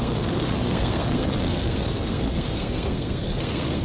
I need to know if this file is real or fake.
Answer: fake